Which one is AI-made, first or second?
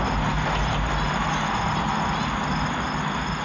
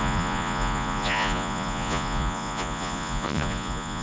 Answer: second